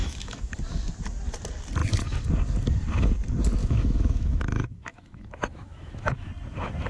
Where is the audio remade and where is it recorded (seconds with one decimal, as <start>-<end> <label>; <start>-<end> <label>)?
0.0-0.6 remade; 0.6-3.6 recorded; 3.6-6.3 remade; 6.3-6.9 recorded